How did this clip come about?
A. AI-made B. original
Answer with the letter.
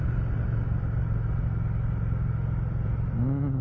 B